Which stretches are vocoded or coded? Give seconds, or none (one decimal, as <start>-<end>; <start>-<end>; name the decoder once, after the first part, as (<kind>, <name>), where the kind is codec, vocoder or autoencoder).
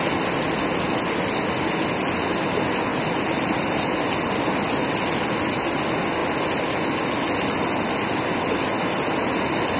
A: 2.9-4.1 (vocoder, BigVGAN v2)